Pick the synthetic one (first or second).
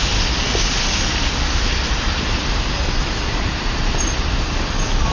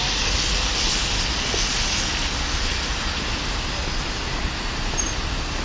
first